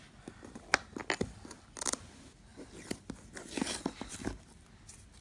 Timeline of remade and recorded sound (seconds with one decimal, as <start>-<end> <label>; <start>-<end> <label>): 0.0-5.2 recorded